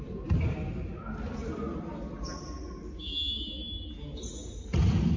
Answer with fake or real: real